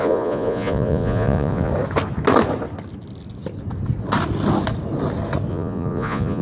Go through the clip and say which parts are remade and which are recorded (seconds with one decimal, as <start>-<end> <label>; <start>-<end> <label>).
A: 0.0-1.7 remade; 1.7-5.5 recorded; 5.5-6.4 remade